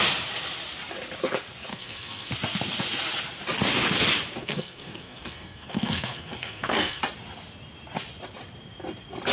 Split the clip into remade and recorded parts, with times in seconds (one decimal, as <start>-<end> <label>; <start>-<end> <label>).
0.0-1.7 recorded; 1.7-2.3 remade; 2.3-4.4 recorded; 4.4-7.0 remade; 7.0-9.3 recorded